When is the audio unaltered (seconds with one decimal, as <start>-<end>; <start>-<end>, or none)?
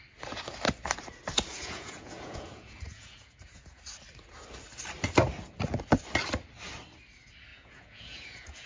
0.0-1.5; 3.8-7.5